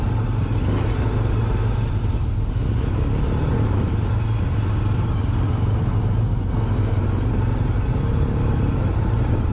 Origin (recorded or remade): recorded